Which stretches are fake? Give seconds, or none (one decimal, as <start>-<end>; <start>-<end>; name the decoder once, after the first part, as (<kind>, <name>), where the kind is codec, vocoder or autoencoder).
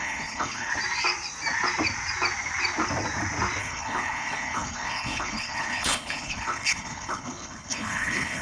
0.0-0.7 (codec, HILCodec); 3.6-8.4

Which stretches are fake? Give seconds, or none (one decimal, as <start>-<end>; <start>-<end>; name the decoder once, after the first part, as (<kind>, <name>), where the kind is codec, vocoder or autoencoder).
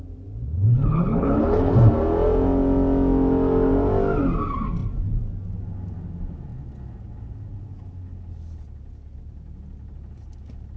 0.7-1.7 (codec, HILCodec)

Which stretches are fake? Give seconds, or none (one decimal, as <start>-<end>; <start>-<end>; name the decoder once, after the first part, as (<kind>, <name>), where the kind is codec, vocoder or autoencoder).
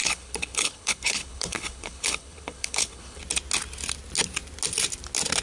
0.0-3.2 (codec, HILCodec)